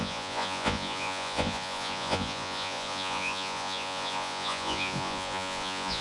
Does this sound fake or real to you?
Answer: fake